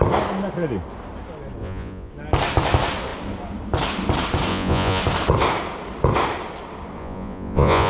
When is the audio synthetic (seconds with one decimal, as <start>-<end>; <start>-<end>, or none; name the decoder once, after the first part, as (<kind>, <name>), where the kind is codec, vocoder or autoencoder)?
1.6-2.1 (vocoder, Vocos); 4.5-5.0; 7.0-7.9